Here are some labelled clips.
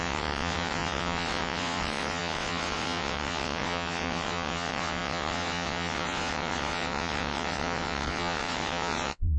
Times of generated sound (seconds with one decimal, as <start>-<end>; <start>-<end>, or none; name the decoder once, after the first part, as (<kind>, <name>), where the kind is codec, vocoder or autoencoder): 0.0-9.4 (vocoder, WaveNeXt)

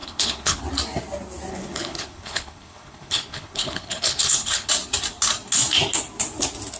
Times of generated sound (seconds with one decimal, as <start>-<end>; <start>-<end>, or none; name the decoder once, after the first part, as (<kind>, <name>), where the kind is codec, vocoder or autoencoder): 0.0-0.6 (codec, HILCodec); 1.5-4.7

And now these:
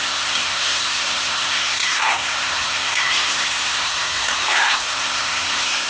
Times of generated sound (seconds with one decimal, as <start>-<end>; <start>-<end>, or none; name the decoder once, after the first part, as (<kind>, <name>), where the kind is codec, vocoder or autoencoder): 0.0-5.9 (codec, SNAC)

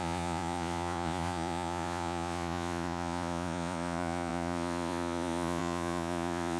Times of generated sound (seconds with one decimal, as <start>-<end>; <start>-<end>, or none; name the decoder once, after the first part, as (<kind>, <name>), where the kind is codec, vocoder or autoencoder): 0.0-6.6 (vocoder, Vocos)